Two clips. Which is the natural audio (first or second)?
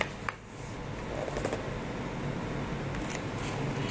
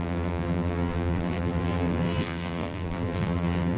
first